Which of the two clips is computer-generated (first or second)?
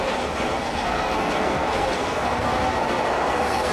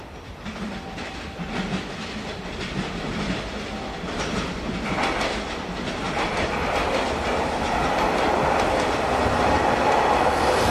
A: first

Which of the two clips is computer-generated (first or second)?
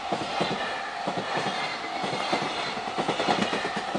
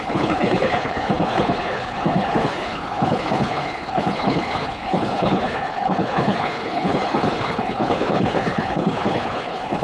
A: second